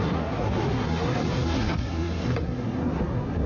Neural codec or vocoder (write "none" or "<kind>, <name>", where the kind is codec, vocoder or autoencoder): codec, SNAC